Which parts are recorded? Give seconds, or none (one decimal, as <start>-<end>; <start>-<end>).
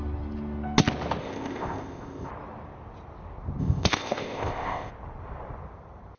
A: 0.0-1.2; 2.3-3.6; 4.9-6.2